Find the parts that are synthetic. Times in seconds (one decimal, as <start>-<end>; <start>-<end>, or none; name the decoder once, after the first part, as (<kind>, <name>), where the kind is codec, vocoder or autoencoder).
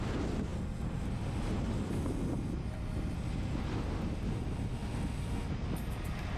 none